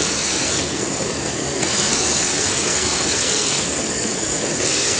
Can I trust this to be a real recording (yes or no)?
no